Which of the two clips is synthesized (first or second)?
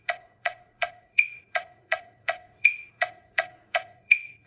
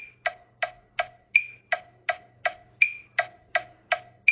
first